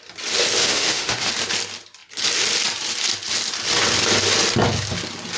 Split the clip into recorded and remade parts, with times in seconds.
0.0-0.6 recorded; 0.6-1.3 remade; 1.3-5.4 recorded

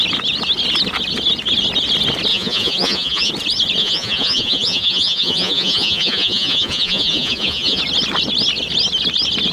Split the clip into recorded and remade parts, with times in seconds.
0.0-2.3 recorded; 2.3-3.3 remade; 3.3-3.8 recorded; 3.8-7.8 remade; 7.8-9.5 recorded

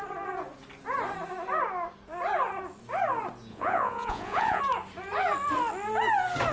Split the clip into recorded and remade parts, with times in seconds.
0.0-3.5 recorded; 3.5-4.6 remade; 4.6-6.5 recorded

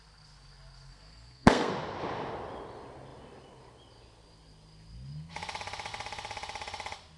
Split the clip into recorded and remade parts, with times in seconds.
0.0-0.9 recorded; 0.9-1.7 remade; 1.7-7.2 recorded

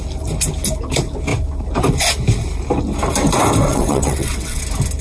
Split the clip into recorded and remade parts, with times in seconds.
0.0-3.7 recorded; 3.7-4.6 remade; 4.6-5.0 recorded

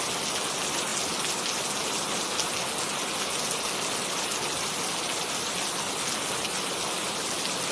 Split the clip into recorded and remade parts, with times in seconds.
0.0-7.7 recorded

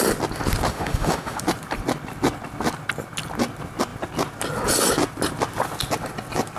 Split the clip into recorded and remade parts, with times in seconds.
0.0-0.7 recorded; 0.7-1.4 remade; 1.4-6.6 recorded